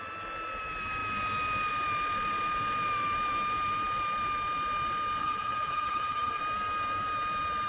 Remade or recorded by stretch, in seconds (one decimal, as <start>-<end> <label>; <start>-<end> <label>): 0.0-5.2 recorded; 5.2-6.4 remade; 6.4-7.7 recorded